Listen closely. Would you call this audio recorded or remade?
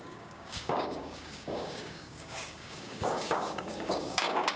remade